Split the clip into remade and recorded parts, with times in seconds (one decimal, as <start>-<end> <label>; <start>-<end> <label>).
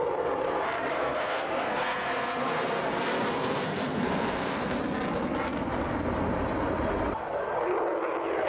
0.0-0.9 recorded; 0.9-2.8 remade; 2.8-3.3 recorded; 3.3-4.8 remade; 4.8-8.5 recorded